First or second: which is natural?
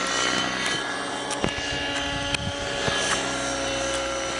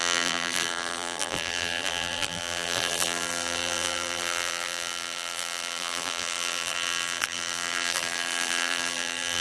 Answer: first